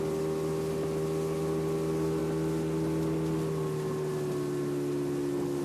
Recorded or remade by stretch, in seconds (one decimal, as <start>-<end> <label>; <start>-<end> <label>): 0.0-5.6 recorded